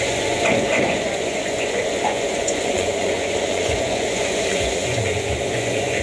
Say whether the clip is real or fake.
fake